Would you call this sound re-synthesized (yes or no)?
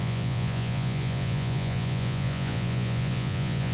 yes